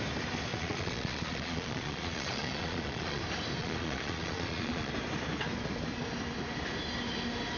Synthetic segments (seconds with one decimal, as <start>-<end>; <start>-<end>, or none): 0.5-3.2; 3.6-4.9